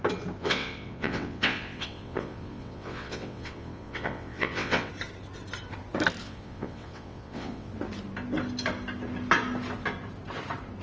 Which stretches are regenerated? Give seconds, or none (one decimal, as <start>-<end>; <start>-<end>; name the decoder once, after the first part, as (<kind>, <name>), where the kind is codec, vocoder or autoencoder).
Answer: 0.4-4.9 (vocoder, WaveNeXt); 6.2-7.7